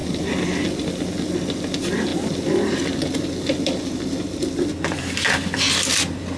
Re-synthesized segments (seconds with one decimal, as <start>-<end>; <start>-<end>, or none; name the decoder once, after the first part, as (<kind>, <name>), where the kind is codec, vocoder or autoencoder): none